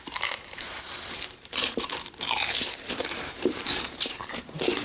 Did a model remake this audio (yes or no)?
yes